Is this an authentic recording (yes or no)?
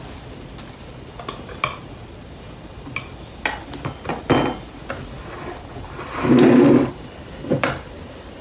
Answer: yes